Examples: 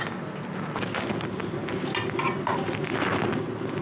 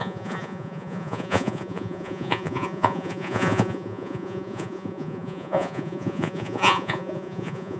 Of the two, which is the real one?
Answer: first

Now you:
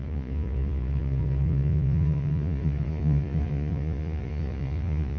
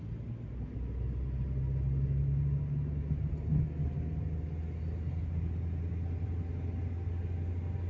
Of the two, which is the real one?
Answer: second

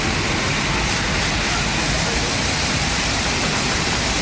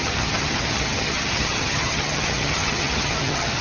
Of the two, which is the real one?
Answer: first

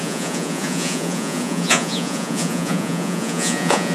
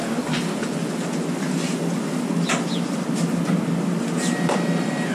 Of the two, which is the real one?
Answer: second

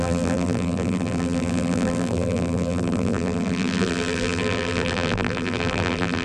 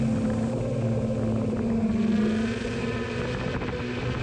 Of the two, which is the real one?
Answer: second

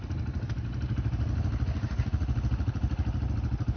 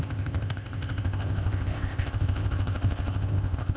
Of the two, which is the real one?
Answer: first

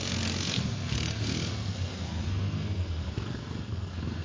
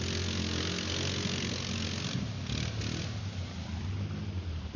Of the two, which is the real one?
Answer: second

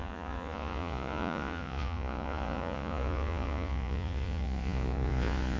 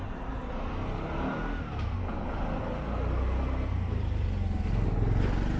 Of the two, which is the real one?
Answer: second